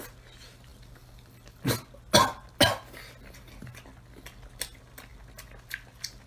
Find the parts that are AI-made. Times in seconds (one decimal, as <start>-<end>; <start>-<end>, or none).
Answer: none